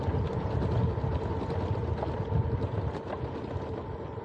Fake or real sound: real